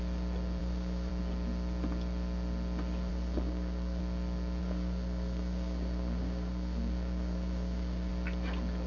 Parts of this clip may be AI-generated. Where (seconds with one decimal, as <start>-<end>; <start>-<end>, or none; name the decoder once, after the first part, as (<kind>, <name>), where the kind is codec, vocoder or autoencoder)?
0.6-1.1 (codec, SNAC); 3.1-4.0; 4.6-8.1